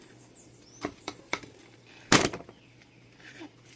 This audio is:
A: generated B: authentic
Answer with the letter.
A